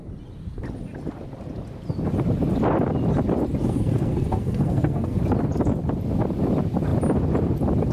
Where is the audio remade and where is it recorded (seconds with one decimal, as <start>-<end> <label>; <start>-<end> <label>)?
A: 0.0-3.6 recorded; 3.6-5.2 remade; 5.2-7.9 recorded